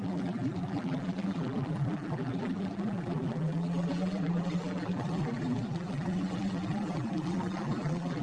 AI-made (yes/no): yes